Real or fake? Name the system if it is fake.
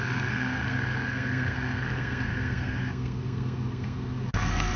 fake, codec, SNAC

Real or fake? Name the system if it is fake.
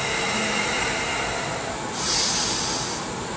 real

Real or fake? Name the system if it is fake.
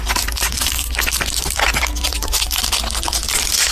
real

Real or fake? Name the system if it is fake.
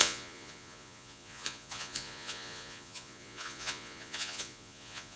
fake, vocoder, Vocos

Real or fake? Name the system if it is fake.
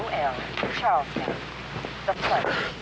real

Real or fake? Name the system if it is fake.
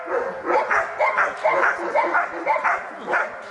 real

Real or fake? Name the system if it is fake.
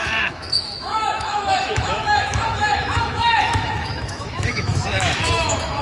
fake, autoencoder, DAC-VAE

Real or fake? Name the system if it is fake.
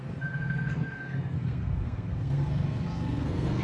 fake, codec, SNAC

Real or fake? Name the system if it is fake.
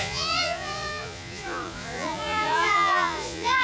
fake, vocoder, Vocos